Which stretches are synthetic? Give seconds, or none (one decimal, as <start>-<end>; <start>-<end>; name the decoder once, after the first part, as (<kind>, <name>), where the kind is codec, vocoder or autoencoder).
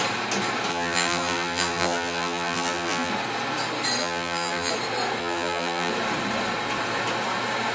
0.7-3.1 (vocoder, BigVGAN v2); 4.0-4.7; 5.2-5.9